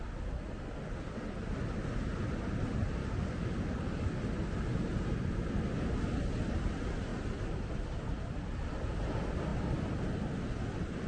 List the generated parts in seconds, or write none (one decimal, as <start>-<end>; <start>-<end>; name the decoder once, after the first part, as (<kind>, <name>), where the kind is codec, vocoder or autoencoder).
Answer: 3.0-4.2 (codec, DAC)